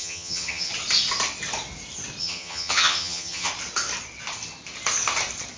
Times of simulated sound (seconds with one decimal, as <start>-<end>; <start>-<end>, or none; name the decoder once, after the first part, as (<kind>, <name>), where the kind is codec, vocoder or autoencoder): 0.0-0.7 (vocoder, HiFi-GAN); 2.2-3.5